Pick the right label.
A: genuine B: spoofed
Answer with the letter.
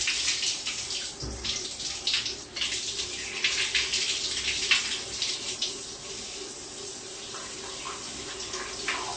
A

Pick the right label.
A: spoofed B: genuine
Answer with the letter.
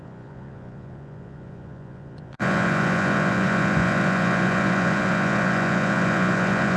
A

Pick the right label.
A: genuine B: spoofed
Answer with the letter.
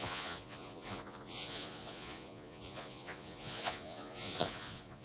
B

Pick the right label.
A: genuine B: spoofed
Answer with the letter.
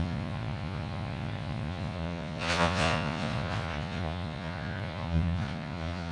B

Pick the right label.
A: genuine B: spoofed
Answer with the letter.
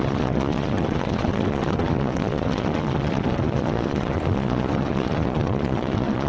B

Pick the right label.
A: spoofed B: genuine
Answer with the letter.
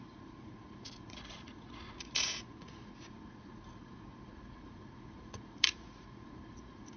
A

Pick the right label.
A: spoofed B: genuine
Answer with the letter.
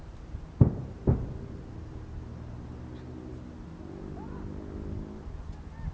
B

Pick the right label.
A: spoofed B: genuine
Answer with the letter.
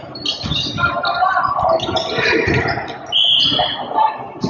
B